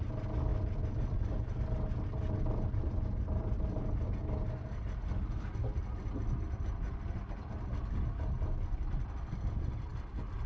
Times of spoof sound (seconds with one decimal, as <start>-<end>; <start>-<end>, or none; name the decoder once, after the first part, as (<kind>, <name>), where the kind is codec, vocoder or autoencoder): none